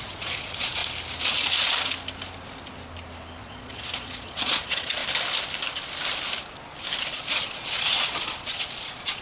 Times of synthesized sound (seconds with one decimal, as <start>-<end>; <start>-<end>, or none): 0.0-0.8; 3.4-5.0; 7.1-9.2